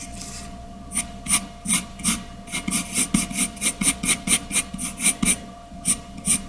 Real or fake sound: real